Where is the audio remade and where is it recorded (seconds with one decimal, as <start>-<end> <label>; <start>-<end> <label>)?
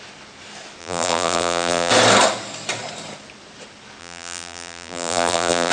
0.0-0.8 recorded; 0.8-1.9 remade; 1.9-4.0 recorded; 4.0-5.7 remade